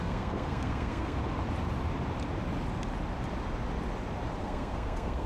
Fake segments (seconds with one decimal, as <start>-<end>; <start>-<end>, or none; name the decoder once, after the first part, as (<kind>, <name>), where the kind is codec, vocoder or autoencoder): 0.0-1.2 (codec, SNAC); 4.4-5.3